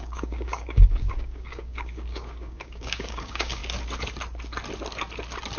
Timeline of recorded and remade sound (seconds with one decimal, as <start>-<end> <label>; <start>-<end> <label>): 0.0-3.6 remade; 3.6-5.6 recorded